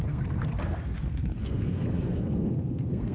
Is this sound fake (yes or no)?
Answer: yes